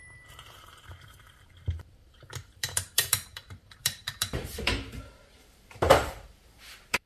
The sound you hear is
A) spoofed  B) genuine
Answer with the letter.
A